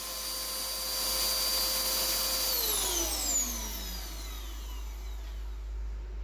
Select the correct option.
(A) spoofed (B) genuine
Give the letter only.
B